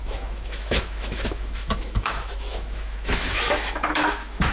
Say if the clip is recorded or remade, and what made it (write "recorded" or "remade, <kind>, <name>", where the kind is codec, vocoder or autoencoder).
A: remade, autoencoder, DAC-VAE